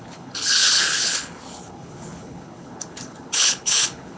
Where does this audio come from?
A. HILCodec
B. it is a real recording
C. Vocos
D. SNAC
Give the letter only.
A